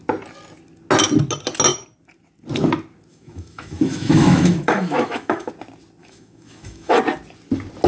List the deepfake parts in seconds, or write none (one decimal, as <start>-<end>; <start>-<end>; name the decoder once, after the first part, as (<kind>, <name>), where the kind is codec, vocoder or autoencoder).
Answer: 3.1-5.5 (autoencoder, DAC-VAE); 6.0-7.0